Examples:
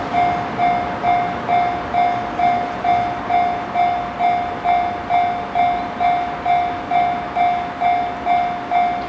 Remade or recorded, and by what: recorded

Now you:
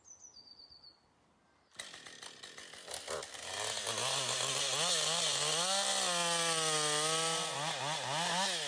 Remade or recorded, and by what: recorded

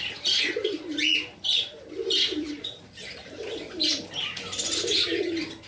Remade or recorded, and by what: recorded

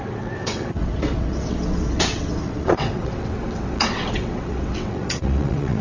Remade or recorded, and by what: remade, vocoder, WaveNeXt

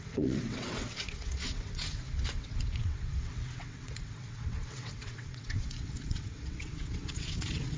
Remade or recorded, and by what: remade, vocoder, WaveNeXt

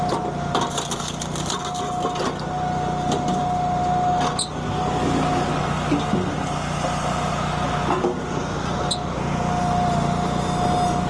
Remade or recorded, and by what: recorded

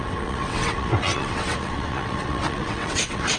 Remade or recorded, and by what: remade, vocoder, WaveNeXt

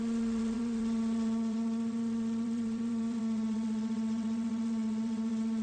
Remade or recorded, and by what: remade, vocoder, WaveNeXt